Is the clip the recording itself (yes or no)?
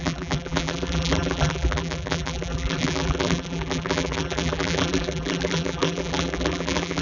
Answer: no